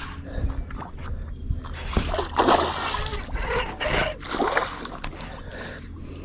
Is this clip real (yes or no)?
yes